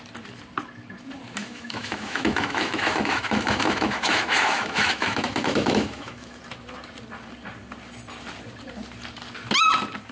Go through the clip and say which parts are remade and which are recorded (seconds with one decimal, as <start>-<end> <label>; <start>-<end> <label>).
0.0-1.4 recorded; 1.4-6.4 remade; 6.4-10.1 recorded